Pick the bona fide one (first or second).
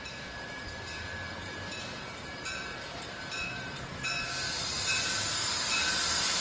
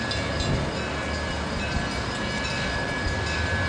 second